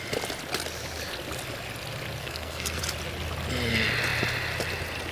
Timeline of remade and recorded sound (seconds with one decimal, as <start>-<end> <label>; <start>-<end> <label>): 0.0-2.2 recorded; 2.2-2.8 remade; 2.8-5.1 recorded